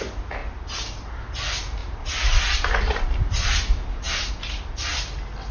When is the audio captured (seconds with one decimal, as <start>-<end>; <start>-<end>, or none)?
0.0-0.4; 1.1-1.8; 4.3-5.5